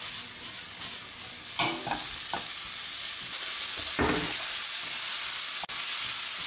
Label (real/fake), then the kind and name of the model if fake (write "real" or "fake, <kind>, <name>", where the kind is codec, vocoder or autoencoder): real